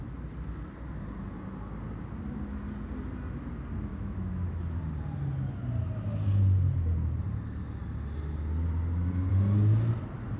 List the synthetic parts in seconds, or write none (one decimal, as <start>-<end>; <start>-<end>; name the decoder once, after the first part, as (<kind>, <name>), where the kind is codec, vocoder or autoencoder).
3.9-4.8 (autoencoder, DAC-VAE)